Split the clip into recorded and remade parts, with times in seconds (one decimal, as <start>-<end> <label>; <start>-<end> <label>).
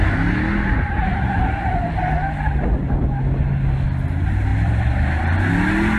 0.0-1.1 recorded; 1.1-1.9 remade; 1.9-4.5 recorded; 4.5-5.3 remade; 5.3-6.0 recorded